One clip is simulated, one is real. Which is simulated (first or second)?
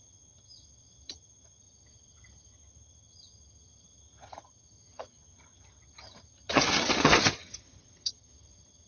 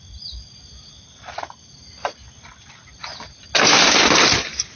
first